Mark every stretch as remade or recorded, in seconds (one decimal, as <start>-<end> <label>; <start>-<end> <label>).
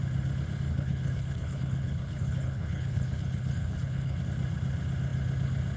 0.0-0.7 recorded; 0.7-4.2 remade; 4.2-5.8 recorded